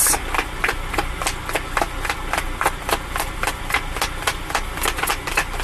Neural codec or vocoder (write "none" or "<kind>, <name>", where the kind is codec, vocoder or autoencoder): none